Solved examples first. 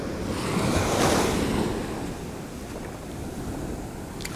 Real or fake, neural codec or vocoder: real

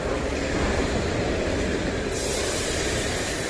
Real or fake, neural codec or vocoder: real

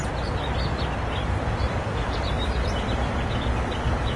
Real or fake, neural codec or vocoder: fake, vocoder, BigVGAN v2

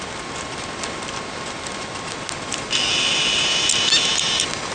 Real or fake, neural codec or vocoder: real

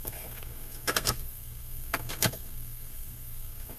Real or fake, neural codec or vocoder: fake, codec, SNAC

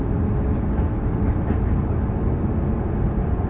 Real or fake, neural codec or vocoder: real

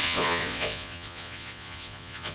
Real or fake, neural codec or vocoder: fake, vocoder, Vocos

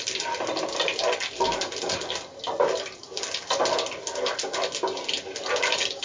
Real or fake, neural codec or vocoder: real